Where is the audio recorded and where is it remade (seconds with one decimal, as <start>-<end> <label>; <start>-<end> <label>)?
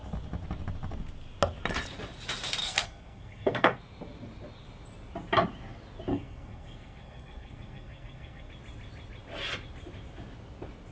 0.0-2.6 recorded; 2.6-3.8 remade; 3.8-6.1 recorded; 6.1-8.5 remade; 8.5-10.9 recorded